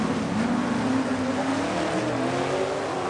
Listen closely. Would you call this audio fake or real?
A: real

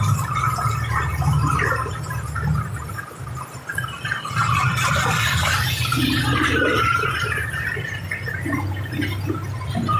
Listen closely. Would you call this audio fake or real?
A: real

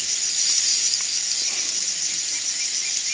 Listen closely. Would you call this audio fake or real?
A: real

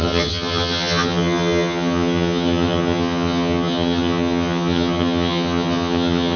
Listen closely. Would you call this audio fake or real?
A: fake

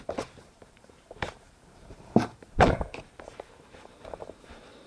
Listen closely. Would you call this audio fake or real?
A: fake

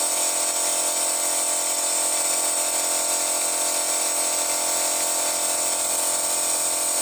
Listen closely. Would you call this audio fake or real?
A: real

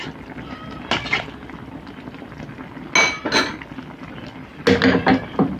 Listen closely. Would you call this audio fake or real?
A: real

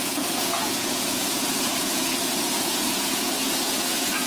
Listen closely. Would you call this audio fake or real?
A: fake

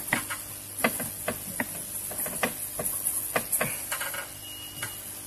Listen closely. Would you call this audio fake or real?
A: real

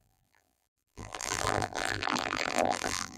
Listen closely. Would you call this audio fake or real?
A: fake